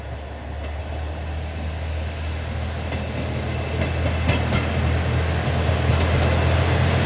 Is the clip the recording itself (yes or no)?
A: yes